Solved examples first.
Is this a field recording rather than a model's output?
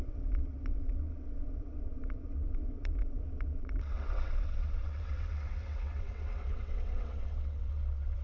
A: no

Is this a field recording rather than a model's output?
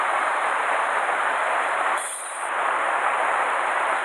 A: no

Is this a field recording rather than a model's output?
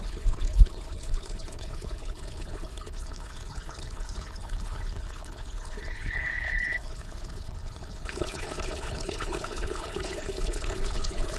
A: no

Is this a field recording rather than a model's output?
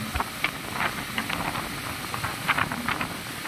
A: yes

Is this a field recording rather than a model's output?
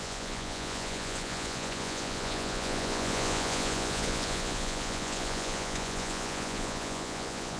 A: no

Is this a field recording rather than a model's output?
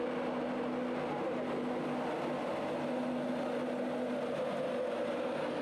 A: yes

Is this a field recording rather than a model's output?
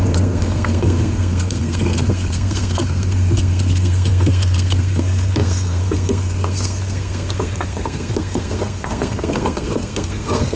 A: no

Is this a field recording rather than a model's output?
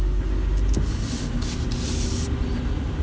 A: yes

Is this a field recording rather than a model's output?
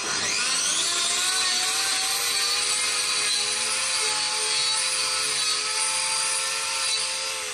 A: yes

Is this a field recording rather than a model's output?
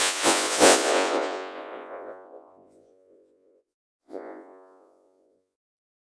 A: no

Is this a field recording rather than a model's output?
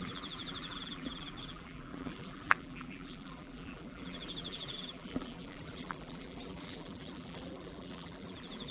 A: no